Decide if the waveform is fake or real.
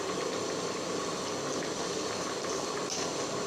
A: real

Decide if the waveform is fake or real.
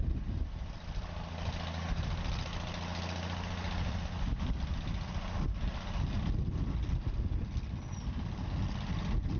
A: real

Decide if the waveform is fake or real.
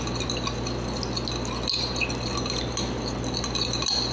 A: real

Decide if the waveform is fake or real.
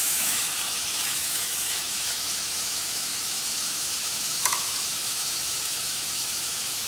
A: fake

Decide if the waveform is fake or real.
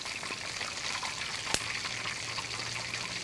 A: real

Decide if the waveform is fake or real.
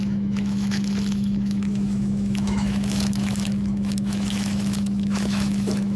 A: fake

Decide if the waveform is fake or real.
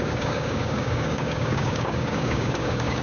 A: fake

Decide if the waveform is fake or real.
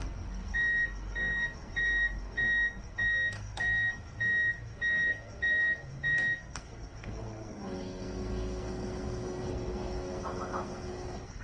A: fake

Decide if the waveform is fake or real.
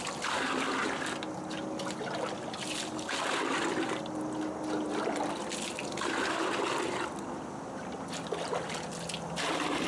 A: real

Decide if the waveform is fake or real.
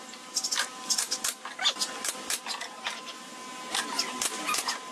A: real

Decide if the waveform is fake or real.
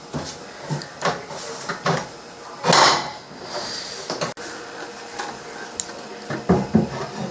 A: real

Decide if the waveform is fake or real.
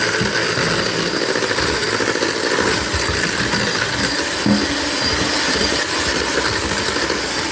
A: real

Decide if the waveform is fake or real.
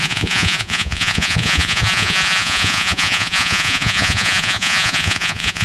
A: fake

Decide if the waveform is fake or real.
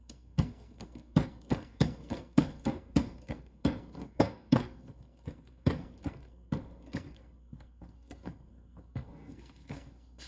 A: fake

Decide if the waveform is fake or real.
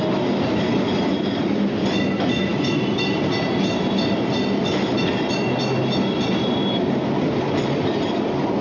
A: real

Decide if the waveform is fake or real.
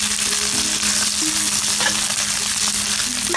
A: real